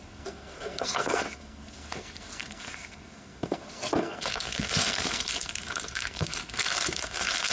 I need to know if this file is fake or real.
fake